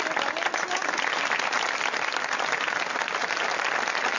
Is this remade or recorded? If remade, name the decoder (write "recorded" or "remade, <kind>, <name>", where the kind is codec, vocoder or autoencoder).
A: recorded